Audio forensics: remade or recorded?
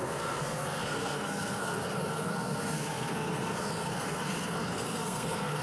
remade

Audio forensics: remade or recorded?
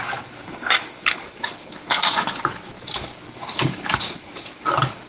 remade